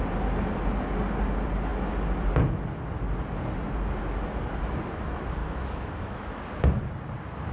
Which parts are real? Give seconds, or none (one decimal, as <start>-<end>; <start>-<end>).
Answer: 0.0-5.4; 6.4-7.5